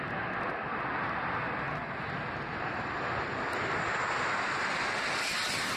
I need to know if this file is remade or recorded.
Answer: recorded